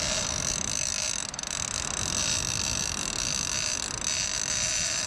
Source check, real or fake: real